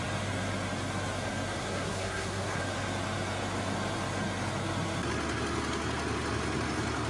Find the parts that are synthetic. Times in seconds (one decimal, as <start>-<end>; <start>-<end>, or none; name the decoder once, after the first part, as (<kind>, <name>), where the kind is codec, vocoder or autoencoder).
1.6-2.6 (codec, SNAC)